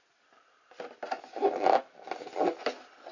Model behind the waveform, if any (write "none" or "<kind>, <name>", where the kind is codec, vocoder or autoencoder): none